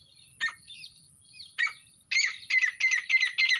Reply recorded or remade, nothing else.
recorded